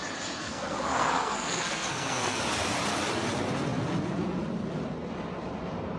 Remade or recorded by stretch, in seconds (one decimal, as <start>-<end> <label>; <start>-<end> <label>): 0.0-0.4 recorded; 0.4-2.4 remade; 2.4-6.0 recorded